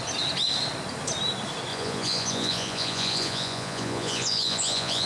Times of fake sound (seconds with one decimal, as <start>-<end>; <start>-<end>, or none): 1.7-5.1

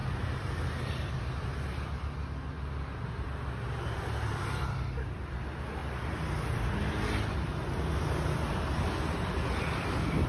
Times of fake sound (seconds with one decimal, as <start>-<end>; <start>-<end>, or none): none